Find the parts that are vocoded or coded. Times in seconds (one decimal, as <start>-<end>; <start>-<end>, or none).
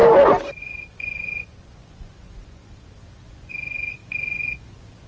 0.6-5.1